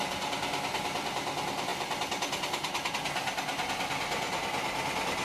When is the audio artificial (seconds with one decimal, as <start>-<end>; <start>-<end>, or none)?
none

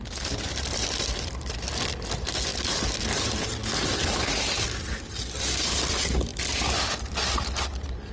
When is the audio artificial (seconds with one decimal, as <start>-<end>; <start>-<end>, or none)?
none

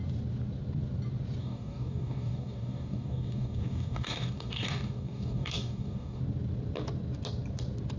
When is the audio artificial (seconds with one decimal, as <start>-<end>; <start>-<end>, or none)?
1.4-6.2

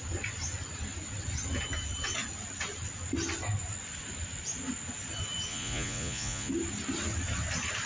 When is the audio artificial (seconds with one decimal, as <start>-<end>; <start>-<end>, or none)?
5.5-6.5

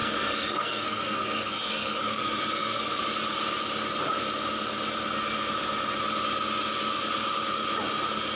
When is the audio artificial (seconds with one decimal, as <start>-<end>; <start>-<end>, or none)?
0.0-3.0

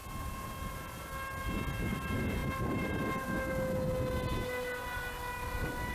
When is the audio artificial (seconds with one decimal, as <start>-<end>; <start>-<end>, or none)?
2.4-3.0